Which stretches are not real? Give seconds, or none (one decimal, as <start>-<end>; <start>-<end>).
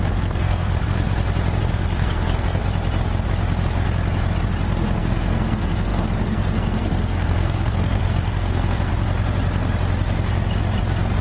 0.0-1.1; 1.6-2.6; 5.0-8.9